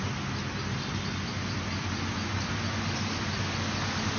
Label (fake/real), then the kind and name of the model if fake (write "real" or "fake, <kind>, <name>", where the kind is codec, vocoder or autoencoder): real